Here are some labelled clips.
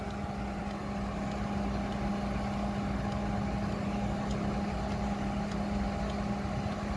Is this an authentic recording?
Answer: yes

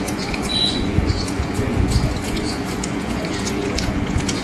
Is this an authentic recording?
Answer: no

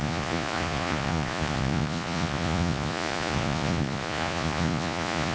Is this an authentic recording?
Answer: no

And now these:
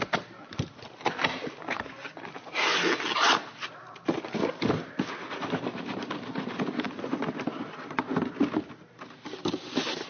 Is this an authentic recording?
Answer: yes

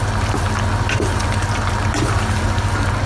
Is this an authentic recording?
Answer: yes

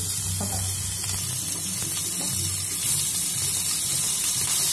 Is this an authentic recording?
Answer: yes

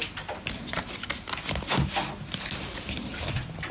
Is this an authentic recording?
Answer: yes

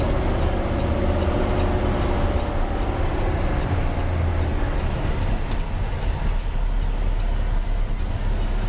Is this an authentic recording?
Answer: yes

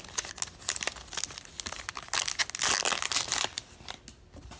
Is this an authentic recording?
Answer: yes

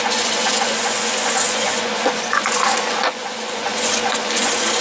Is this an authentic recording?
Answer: no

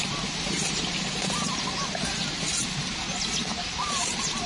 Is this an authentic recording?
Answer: yes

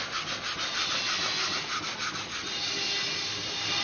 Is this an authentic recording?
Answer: yes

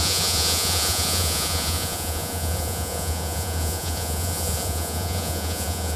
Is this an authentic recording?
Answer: no